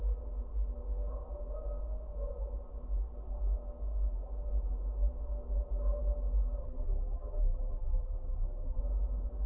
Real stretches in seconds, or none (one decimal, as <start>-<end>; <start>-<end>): 0.0-6.6; 8.8-9.5